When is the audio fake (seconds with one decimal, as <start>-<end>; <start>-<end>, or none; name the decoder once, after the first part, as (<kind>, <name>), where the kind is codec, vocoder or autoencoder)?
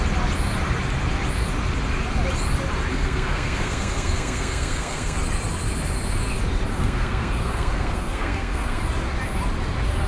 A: 2.9-5.2 (codec, SNAC); 6.7-8.8